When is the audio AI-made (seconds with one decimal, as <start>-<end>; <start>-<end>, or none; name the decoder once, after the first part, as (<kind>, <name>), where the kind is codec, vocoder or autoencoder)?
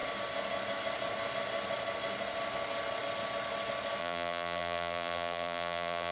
4.0-6.1 (vocoder, BigVGAN v2)